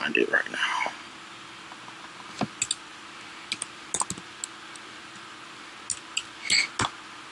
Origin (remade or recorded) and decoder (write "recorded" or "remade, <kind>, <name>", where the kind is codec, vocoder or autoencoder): recorded